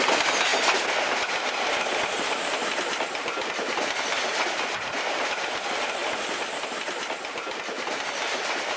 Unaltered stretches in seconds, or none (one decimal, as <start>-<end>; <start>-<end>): 0.0-8.8